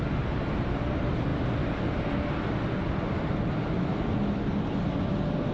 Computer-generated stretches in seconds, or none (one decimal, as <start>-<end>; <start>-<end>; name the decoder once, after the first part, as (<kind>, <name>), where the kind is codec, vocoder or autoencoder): none